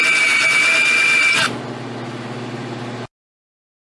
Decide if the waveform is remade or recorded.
recorded